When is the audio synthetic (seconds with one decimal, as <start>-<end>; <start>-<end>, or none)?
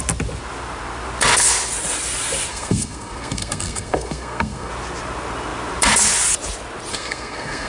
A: 2.5-4.7; 6.9-7.7